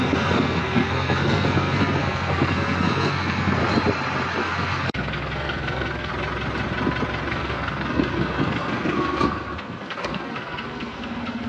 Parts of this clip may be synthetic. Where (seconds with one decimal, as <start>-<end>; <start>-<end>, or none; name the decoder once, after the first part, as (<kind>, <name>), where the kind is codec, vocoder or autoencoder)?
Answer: 0.0-3.6 (codec, SNAC); 4.4-6.1; 7.3-11.5